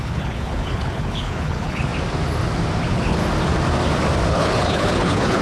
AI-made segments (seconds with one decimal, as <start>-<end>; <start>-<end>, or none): 0.0-1.9; 2.8-3.2; 4.3-5.4